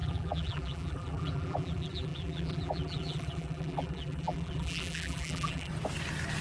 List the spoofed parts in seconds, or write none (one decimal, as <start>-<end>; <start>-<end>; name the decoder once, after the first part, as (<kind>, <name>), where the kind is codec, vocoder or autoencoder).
0.0-5.7 (vocoder, BigVGAN v2)